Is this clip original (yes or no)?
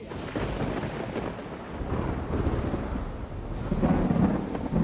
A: yes